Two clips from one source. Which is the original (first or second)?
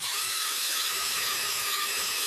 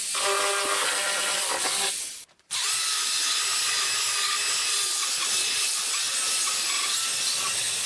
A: second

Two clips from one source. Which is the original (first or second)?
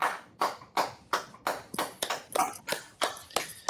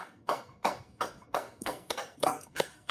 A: first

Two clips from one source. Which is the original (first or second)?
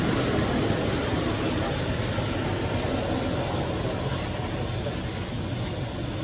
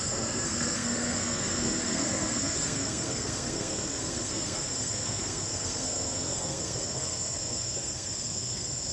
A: first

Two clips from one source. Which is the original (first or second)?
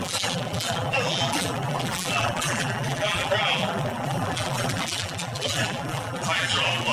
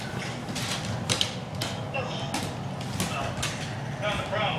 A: second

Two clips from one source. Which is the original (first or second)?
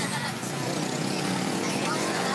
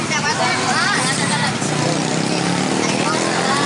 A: second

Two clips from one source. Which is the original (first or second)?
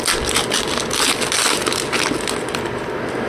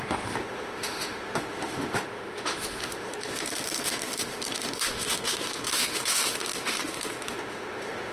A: first